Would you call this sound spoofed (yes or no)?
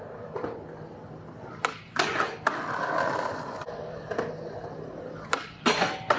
no